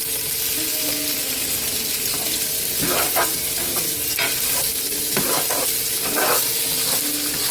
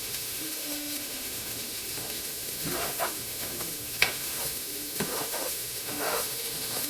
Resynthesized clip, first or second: second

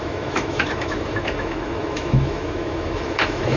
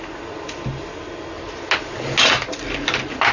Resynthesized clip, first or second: first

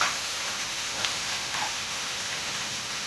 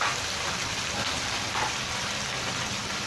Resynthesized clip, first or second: first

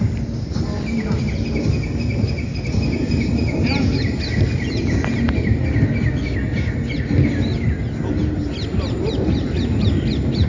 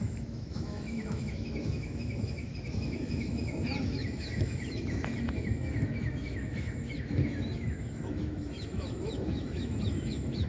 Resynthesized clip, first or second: second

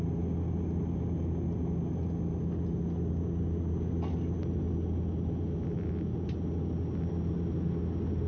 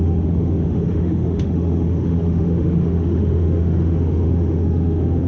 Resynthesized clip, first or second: second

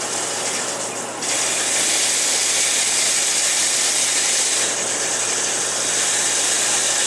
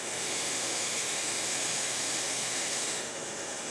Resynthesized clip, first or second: second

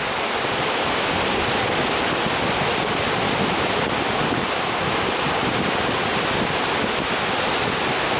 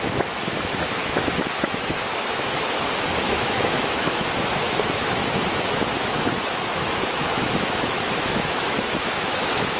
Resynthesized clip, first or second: second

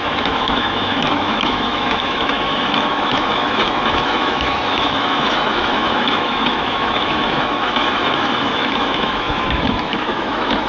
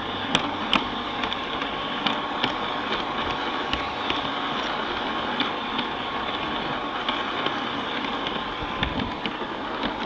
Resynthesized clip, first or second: first